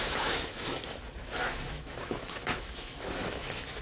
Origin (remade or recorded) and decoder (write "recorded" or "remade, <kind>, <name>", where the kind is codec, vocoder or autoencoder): remade, autoencoder, DAC-VAE